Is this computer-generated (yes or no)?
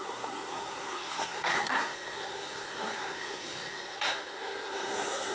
yes